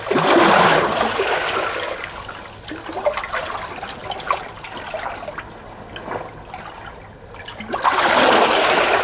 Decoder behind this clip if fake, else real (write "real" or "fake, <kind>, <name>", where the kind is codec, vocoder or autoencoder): real